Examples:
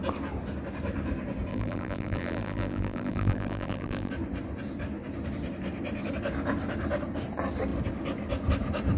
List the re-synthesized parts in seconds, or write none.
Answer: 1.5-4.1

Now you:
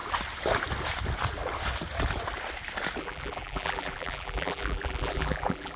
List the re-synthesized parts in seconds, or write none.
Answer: 3.0-5.8

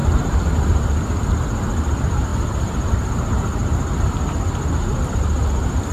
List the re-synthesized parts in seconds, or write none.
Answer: 0.0-0.6